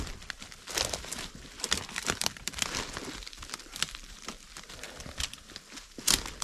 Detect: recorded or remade remade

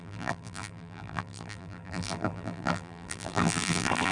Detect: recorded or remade remade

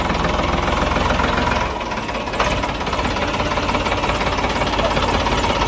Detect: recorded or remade recorded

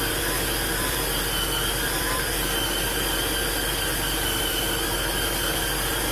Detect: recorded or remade remade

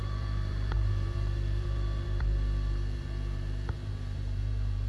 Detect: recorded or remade remade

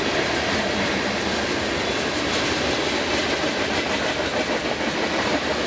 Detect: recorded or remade recorded